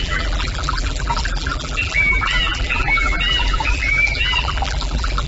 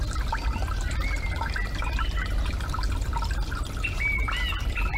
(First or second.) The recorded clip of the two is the second